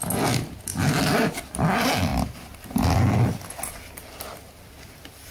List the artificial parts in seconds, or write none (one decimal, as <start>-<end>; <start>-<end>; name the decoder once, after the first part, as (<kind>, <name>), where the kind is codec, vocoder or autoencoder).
none